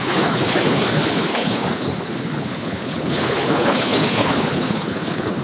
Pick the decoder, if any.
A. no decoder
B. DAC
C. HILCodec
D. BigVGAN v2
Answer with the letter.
C